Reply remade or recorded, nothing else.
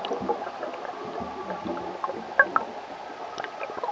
recorded